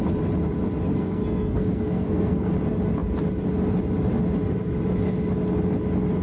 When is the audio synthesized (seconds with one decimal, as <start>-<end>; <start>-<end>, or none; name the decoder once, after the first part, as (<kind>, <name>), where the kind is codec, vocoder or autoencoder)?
0.9-2.5 (codec, SNAC)

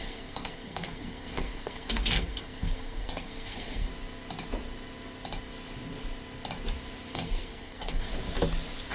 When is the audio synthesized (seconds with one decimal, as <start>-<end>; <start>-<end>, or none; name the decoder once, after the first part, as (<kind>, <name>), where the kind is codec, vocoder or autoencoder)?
0.0-3.9 (codec, SNAC); 7.1-8.1